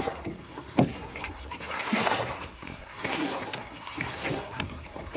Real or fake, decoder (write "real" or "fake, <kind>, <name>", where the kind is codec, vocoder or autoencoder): fake, codec, SNAC